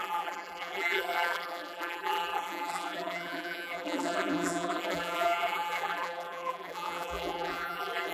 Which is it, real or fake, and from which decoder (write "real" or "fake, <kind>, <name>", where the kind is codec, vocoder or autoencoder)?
fake, vocoder, BigVGAN v2